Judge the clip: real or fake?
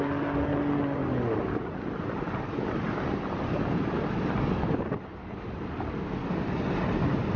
real